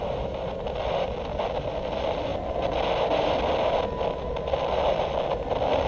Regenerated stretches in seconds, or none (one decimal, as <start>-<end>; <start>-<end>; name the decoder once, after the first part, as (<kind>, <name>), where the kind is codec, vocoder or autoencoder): none